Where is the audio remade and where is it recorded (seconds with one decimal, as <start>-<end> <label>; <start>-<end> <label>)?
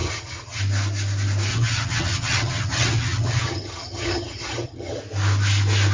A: 0.0-0.6 remade; 0.6-1.5 recorded; 1.5-5.0 remade; 5.0-5.9 recorded